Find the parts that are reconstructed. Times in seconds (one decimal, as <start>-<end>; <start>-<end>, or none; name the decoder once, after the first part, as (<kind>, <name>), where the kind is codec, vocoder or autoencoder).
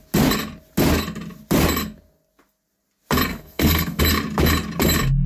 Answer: 3.3-4.0 (codec, SNAC)